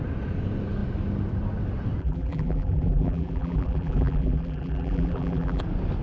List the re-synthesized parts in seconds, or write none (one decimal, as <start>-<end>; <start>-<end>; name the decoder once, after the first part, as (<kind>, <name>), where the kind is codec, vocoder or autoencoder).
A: 2.0-5.6 (vocoder, BigVGAN v2)